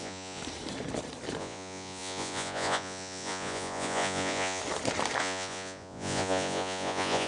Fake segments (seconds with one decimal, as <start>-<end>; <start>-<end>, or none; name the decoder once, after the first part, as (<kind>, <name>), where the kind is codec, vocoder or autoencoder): 0.0-0.4 (vocoder, Vocos); 1.4-4.6; 5.2-7.3